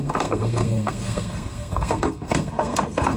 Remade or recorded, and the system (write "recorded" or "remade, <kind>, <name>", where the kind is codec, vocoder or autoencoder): remade, codec, SNAC